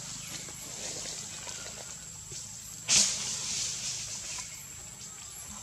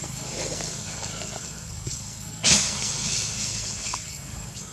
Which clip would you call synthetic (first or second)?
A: second